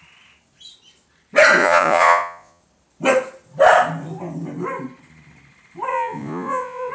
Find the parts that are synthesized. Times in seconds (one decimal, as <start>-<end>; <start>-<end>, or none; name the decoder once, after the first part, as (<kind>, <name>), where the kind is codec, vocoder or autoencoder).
1.6-2.6 (vocoder, Vocos); 5.9-6.9